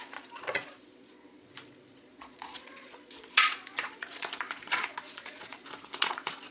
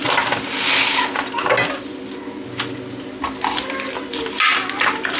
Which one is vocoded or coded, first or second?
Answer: first